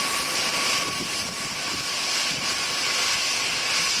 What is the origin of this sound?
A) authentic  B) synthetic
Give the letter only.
A